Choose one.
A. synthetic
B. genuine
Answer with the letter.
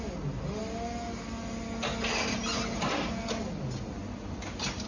B